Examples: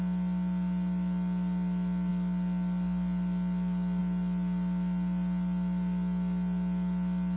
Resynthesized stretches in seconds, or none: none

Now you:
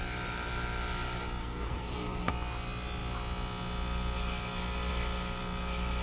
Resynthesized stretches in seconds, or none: 1.4-2.3 (codec, SNAC)

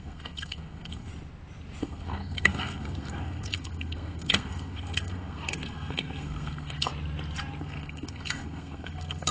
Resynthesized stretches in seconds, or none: 0.0-1.1 (codec, SNAC); 1.8-6.9; 7.6-9.3

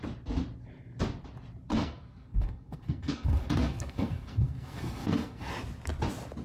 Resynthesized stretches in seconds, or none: 1.7-5.5 (codec, SNAC)